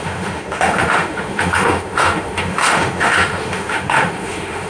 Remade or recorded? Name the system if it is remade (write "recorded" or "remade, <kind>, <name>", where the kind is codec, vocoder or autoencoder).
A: remade, autoencoder, DAC-VAE